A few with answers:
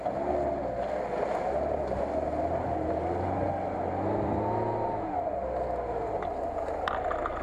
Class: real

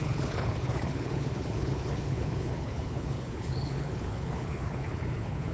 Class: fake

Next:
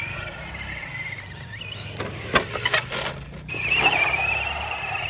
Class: real